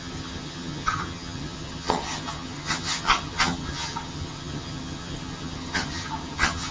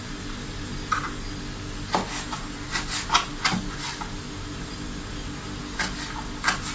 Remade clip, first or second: first